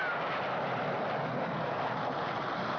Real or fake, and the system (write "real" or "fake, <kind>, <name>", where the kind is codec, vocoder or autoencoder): real